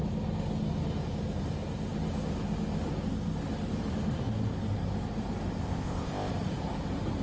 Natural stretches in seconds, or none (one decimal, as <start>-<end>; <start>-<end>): 0.0-5.6; 6.3-7.2